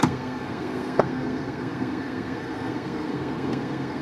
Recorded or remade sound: remade